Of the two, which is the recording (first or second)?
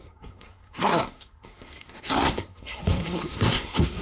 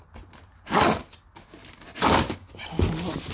second